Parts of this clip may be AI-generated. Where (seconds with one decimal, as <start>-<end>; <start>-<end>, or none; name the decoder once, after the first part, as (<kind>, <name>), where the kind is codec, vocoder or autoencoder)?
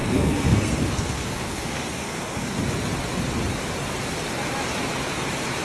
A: 0.0-2.6 (codec, SNAC)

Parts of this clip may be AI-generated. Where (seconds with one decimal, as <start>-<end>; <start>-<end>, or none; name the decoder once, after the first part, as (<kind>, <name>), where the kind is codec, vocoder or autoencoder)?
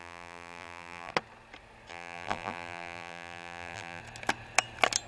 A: 0.0-1.1 (vocoder, BigVGAN v2); 1.9-4.0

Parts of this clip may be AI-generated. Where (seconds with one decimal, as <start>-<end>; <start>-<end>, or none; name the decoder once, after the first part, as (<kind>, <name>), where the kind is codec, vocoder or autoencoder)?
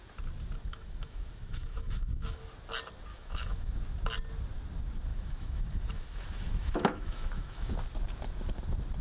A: 0.6-2.4 (autoencoder, DAC-VAE); 3.1-3.7; 5.1-7.7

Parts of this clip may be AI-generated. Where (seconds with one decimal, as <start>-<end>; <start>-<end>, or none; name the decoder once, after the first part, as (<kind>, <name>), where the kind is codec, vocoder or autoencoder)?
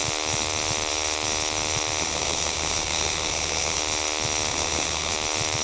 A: 2.0-3.8 (codec, SNAC); 4.5-5.1